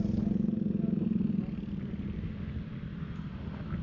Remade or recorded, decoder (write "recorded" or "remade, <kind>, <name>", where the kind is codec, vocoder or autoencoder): recorded